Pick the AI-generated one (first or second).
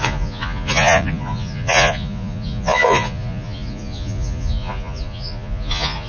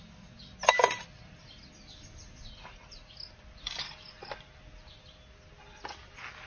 first